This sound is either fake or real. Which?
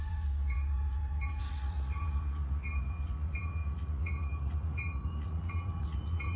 fake